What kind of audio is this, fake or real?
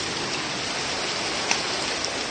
real